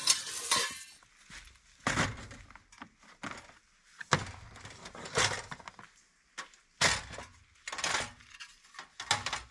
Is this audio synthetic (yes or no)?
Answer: no